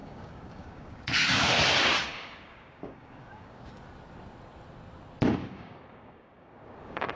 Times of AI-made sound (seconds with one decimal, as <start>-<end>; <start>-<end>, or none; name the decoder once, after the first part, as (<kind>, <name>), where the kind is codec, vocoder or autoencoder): 0.0-1.5 (codec, DAC); 2.0-3.8; 5.4-7.2